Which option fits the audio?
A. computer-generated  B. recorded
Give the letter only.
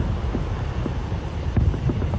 A